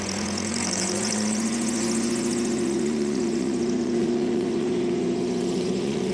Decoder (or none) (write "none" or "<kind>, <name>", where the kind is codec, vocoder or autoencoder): vocoder, Vocos